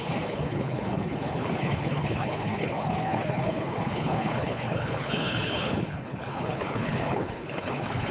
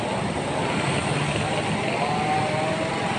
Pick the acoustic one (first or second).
second